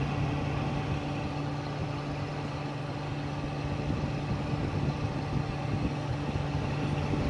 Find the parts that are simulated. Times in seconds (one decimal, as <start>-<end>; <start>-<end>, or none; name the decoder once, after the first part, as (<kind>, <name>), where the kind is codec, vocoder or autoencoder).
none